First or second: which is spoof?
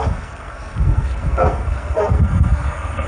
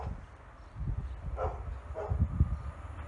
first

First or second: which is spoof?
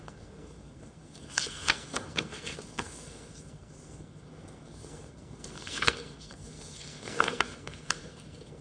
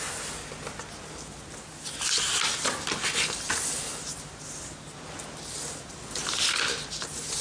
first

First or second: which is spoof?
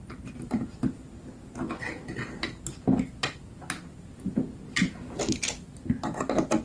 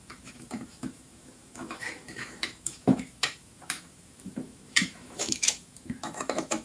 second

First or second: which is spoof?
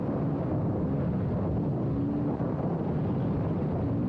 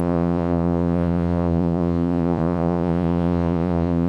second